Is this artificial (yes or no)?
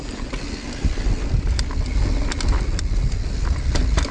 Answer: no